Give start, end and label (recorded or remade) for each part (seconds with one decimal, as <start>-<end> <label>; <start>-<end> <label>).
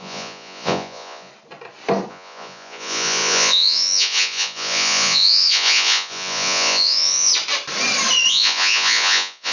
0.0-1.3 remade; 1.3-2.1 recorded; 2.1-7.3 remade; 7.3-8.3 recorded; 8.3-9.5 remade